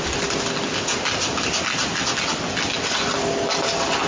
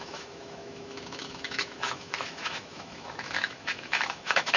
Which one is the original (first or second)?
first